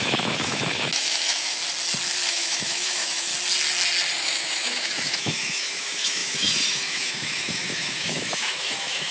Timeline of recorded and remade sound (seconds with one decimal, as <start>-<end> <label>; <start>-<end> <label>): 0.0-1.6 remade; 1.6-2.3 recorded; 2.3-3.3 remade; 3.3-4.2 recorded; 4.2-9.1 remade